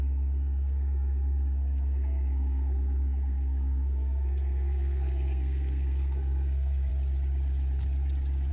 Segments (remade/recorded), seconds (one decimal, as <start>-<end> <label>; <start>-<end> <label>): 0.0-6.9 remade; 6.9-8.5 recorded